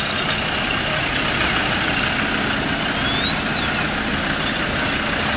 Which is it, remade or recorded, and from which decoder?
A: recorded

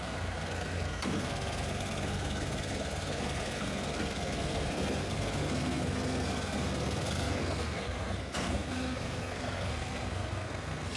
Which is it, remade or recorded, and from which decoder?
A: remade, codec, SNAC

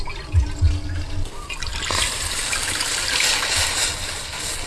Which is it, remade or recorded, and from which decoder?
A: recorded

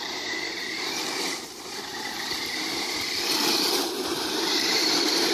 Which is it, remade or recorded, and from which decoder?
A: remade, vocoder, BigVGAN v2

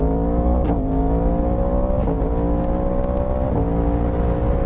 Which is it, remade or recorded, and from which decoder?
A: recorded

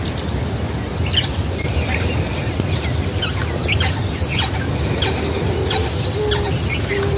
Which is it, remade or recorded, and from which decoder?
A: recorded